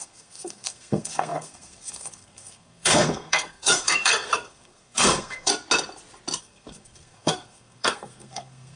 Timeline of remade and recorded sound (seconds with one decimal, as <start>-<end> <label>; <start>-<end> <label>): 0.0-5.5 remade; 5.5-6.4 recorded; 6.4-8.8 remade